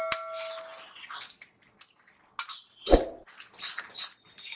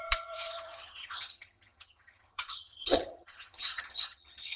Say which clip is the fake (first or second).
second